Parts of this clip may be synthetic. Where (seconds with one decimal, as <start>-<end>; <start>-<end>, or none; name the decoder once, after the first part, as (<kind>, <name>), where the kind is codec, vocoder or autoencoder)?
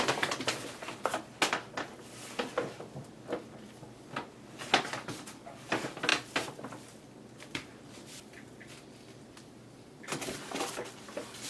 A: none